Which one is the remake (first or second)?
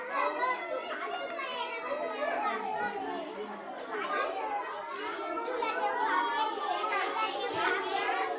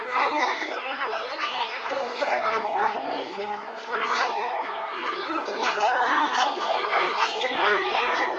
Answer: second